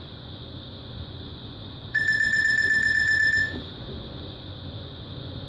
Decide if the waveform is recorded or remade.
remade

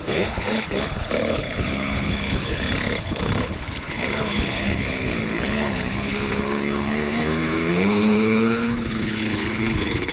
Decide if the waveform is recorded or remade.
remade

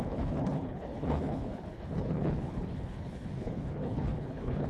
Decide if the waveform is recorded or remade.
remade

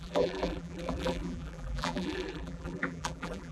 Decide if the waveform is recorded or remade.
remade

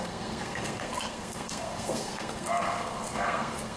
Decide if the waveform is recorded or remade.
remade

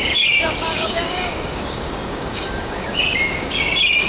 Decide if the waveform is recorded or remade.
remade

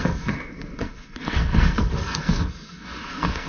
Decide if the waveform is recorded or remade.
remade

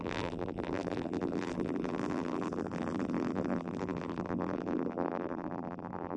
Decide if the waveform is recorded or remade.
remade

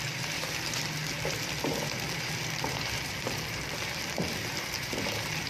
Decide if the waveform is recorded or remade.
remade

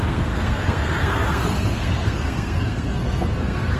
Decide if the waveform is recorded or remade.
remade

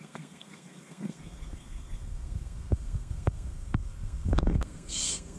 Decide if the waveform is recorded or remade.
remade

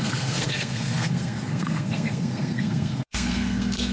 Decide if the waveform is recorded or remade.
remade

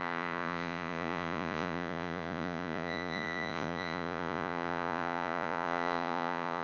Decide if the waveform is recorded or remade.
remade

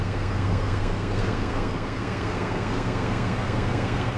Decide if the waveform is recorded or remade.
remade